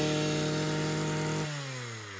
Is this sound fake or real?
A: real